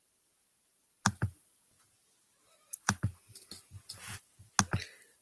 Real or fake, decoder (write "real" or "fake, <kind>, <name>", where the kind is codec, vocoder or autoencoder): real